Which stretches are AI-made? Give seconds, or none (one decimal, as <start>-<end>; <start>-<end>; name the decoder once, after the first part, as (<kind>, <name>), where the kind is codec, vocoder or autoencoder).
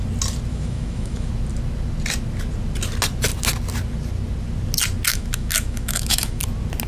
0.5-1.3 (autoencoder, DAC-VAE); 5.1-6.4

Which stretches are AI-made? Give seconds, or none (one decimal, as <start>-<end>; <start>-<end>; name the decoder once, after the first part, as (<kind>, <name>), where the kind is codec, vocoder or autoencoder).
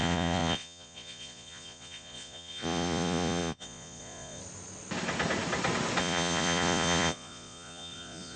0.0-4.4 (vocoder, Vocos); 6.0-8.4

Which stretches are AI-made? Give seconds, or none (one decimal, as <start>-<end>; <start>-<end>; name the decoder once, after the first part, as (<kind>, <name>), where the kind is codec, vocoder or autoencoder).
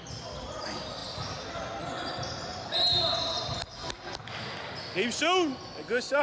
none